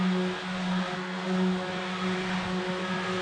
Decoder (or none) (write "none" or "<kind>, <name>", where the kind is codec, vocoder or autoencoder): none